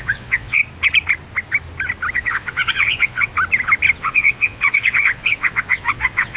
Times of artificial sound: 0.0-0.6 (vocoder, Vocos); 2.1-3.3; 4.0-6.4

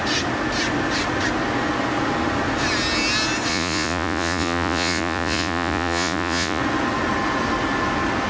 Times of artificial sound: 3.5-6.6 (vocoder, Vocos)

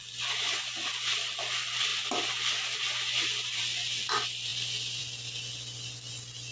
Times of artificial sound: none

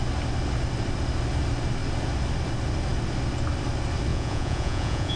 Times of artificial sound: 4.1-5.2 (vocoder, Vocos)

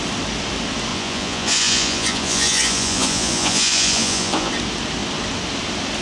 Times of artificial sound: 0.9-4.5 (vocoder, Vocos)